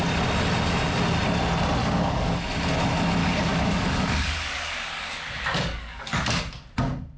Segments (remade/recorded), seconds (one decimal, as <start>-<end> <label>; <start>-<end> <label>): 0.0-1.8 recorded; 1.8-2.4 remade; 2.4-3.2 recorded; 3.2-6.4 remade; 6.4-7.2 recorded